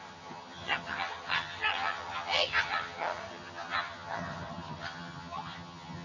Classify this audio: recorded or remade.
remade